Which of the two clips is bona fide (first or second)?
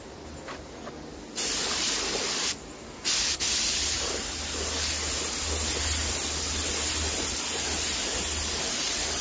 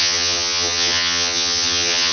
first